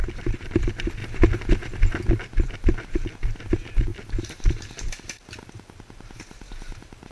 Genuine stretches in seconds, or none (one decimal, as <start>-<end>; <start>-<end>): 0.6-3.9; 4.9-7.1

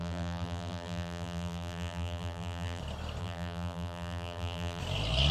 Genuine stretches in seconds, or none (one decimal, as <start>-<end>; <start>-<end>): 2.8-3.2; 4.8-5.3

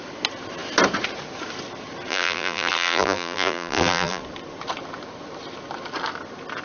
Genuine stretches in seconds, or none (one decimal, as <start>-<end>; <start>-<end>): 0.0-2.1; 4.2-6.6